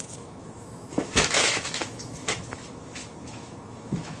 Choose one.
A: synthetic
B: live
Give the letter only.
A